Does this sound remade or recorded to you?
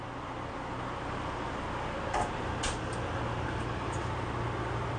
recorded